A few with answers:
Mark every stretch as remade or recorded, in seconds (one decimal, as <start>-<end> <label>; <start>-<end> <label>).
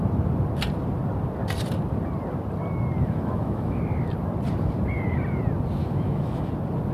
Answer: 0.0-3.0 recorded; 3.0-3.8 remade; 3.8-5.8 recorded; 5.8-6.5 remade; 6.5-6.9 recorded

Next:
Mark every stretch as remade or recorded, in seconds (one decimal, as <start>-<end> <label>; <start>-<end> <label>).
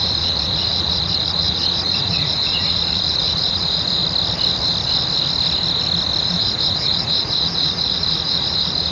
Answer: 0.0-4.0 remade; 4.0-6.2 recorded; 6.2-8.9 remade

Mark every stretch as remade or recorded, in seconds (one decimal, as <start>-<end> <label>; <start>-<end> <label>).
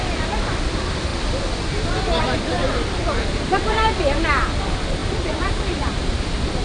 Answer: 0.0-1.1 remade; 1.1-2.2 recorded; 2.2-6.6 remade